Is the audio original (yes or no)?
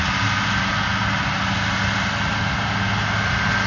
yes